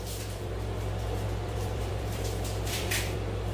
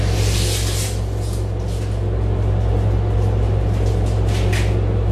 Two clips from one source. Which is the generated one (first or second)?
first